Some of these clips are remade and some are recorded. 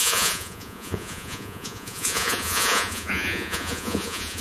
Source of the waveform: remade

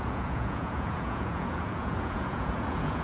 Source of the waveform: remade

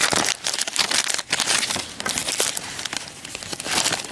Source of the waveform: recorded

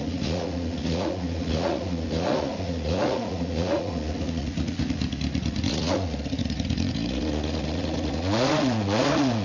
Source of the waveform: remade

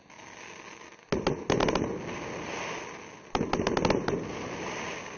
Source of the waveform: recorded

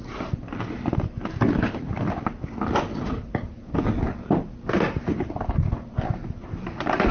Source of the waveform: recorded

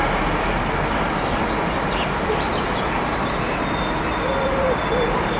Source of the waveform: recorded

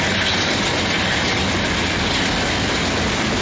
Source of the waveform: recorded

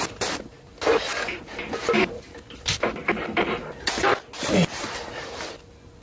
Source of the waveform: recorded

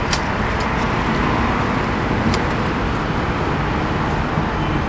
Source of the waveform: recorded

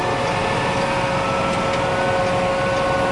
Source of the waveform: recorded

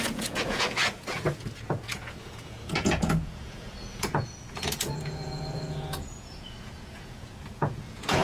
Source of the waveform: remade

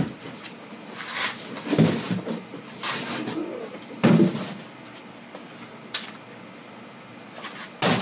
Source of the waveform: recorded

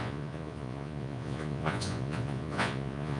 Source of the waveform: remade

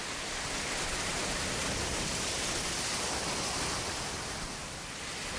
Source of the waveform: recorded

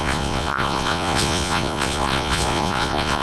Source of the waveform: remade